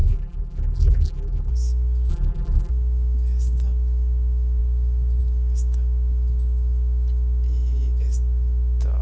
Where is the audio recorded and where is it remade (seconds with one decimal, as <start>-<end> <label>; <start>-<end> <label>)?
0.0-1.5 remade; 1.5-2.1 recorded; 2.1-2.7 remade; 2.7-9.0 recorded